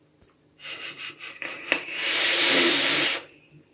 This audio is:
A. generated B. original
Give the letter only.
A